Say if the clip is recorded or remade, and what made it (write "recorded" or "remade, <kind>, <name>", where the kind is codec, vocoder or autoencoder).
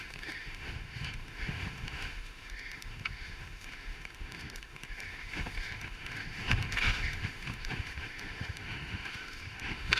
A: remade, autoencoder, DAC-VAE